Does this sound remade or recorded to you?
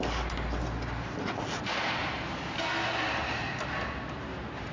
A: recorded